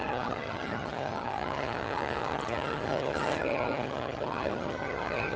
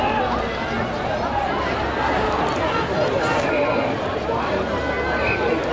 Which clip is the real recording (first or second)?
second